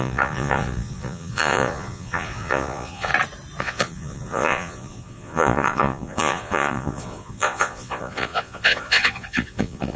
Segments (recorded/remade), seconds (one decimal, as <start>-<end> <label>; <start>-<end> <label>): 0.0-3.1 remade; 3.1-3.6 recorded; 3.6-10.0 remade